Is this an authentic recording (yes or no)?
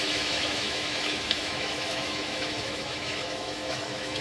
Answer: no